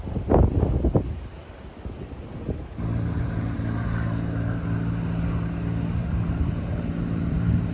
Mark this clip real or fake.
real